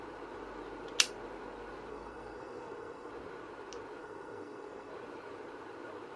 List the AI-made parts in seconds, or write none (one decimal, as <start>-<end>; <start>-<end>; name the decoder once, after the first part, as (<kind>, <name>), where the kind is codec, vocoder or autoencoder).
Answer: 1.9-3.1 (codec, SNAC); 4.0-4.9